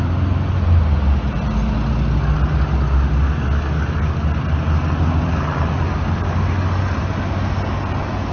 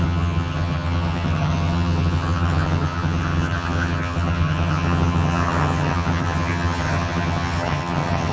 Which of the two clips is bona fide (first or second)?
first